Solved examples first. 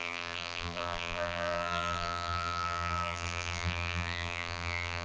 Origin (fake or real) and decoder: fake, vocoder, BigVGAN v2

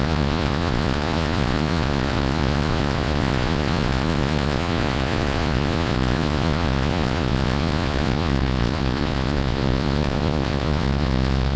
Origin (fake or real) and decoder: fake, vocoder, Vocos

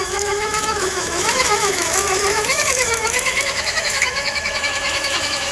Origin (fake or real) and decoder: fake, autoencoder, DAC-VAE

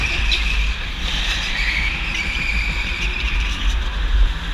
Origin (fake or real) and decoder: fake, vocoder, BigVGAN v2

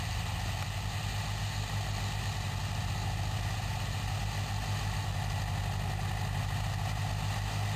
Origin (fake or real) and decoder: real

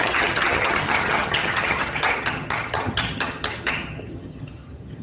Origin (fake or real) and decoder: fake, vocoder, HiFi-GAN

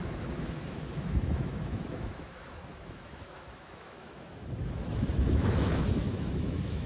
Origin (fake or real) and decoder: fake, autoencoder, DAC-VAE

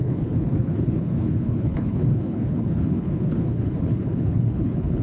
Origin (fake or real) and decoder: fake, codec, HILCodec